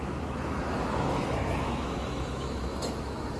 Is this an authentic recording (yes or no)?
no